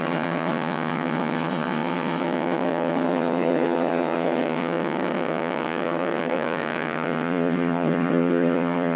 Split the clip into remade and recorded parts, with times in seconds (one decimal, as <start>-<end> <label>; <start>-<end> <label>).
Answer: 0.0-9.0 remade